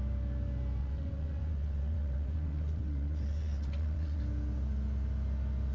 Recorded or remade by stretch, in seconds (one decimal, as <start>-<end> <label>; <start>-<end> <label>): 0.0-0.8 recorded; 0.8-4.2 remade; 4.2-5.7 recorded